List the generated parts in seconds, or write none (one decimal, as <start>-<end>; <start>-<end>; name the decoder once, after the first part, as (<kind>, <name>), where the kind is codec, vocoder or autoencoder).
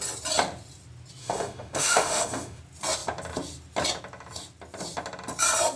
1.2-2.6 (autoencoder, DAC-VAE)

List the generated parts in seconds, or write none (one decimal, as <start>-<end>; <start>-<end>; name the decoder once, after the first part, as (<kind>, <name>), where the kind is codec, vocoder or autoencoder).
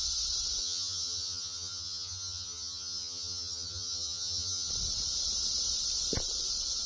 0.6-4.7 (vocoder, HiFi-GAN)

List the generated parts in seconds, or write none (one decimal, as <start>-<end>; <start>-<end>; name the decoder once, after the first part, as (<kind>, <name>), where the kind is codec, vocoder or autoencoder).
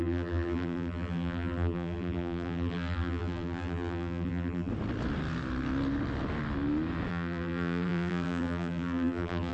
0.0-4.7 (vocoder, BigVGAN v2); 7.1-9.5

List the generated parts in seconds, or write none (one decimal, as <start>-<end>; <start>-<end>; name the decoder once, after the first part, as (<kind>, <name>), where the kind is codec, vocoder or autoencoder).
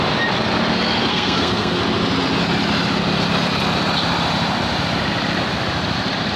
1.1-1.8 (codec, SNAC)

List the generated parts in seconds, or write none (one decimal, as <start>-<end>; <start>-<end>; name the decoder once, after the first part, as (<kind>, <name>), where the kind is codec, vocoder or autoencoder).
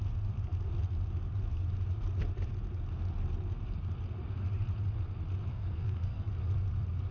5.5-6.3 (codec, SNAC)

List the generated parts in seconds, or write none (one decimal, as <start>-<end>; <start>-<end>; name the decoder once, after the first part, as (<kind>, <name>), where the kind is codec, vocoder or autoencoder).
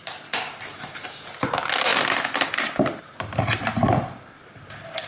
none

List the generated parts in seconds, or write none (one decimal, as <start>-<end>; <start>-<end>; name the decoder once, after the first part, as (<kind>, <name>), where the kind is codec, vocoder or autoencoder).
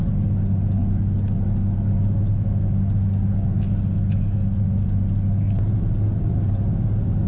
none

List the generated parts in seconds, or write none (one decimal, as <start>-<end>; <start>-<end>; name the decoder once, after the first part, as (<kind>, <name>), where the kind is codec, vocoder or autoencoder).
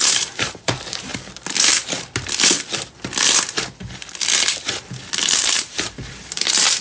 0.0-1.1 (vocoder, BigVGAN v2); 5.2-6.8